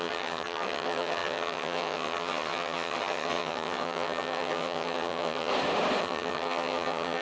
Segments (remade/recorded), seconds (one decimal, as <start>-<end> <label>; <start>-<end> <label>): 0.0-5.5 remade; 5.5-6.0 recorded; 6.0-7.2 remade